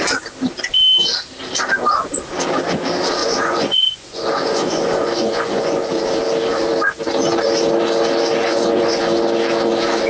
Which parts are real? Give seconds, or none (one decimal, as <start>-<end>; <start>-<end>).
0.0-3.2; 5.9-8.4; 9.0-10.1